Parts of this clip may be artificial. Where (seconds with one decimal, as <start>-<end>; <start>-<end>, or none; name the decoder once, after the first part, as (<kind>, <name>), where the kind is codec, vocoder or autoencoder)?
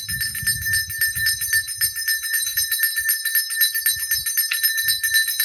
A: 2.2-2.7 (vocoder, Vocos)